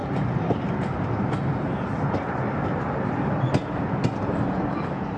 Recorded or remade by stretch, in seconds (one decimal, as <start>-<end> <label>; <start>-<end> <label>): 0.0-5.2 recorded